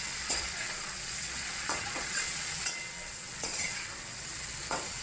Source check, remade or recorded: remade